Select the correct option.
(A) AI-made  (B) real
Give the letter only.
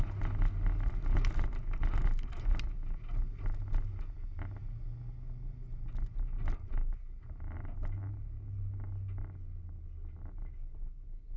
B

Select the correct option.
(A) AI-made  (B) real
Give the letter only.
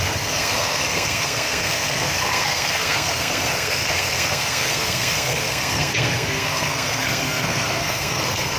A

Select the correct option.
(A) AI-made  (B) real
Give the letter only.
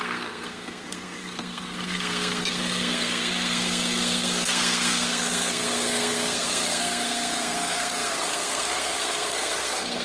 A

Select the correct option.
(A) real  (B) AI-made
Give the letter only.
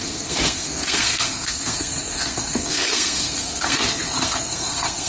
B